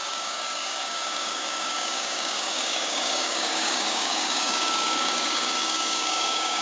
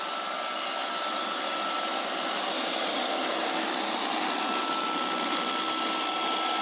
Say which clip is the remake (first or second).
first